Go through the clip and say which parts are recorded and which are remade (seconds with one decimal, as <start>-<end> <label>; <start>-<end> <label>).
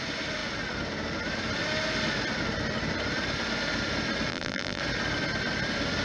0.0-4.3 recorded; 4.3-4.8 remade; 4.8-6.0 recorded